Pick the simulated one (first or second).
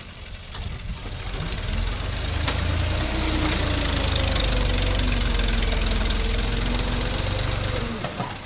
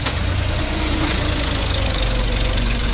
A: second